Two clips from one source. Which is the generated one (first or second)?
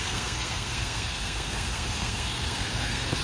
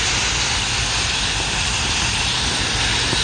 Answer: first